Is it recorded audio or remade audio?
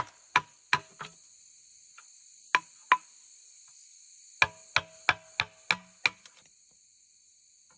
recorded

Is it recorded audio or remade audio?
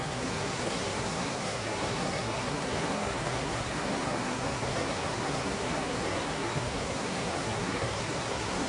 remade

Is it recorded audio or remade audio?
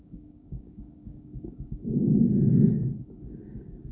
remade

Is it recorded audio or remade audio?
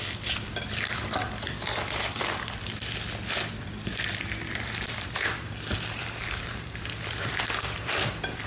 remade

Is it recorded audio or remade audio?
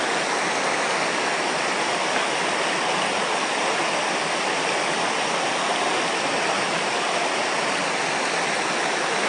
recorded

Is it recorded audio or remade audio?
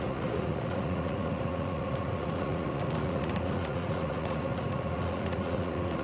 remade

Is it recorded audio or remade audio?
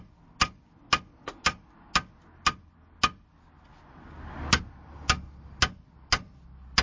recorded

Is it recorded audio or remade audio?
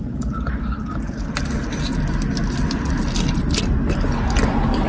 recorded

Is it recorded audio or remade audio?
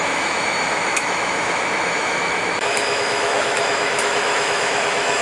remade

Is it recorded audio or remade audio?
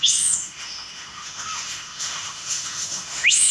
remade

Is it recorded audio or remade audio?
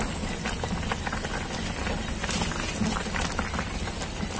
recorded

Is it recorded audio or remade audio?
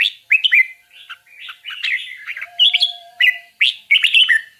recorded